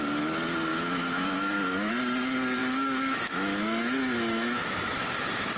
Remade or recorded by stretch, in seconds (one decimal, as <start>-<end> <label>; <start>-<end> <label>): 0.0-0.7 recorded; 0.7-1.9 remade; 1.9-2.6 recorded; 2.6-5.1 remade; 5.1-5.6 recorded